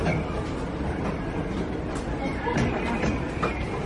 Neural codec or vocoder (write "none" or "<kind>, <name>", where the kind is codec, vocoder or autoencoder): none